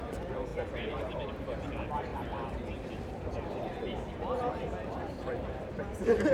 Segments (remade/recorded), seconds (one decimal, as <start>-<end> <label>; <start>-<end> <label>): 0.0-6.3 remade